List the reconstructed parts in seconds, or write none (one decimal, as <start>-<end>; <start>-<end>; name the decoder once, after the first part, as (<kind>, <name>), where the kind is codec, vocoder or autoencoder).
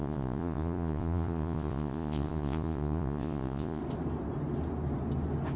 0.0-3.8 (vocoder, Vocos)